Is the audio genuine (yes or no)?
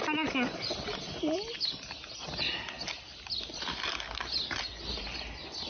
yes